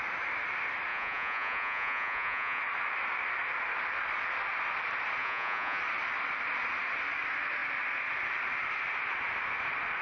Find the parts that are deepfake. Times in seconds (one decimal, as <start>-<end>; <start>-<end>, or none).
0.9-2.6; 5.2-5.8